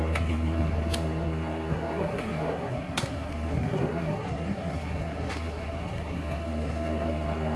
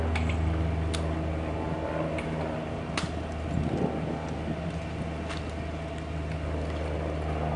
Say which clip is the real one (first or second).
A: second